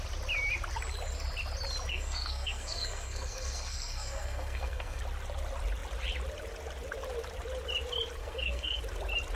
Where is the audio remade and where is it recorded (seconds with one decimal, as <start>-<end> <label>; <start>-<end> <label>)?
0.0-1.9 recorded; 1.9-5.0 remade; 5.0-8.2 recorded; 8.2-8.8 remade; 8.8-9.4 recorded

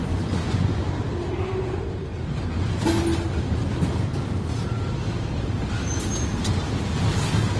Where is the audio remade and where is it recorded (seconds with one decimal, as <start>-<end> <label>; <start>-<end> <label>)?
0.0-0.8 remade; 0.8-7.6 recorded